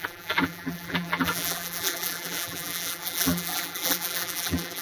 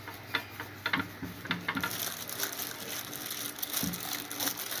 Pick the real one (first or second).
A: second